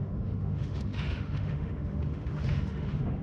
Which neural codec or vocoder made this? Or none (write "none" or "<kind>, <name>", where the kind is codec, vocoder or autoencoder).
autoencoder, DAC-VAE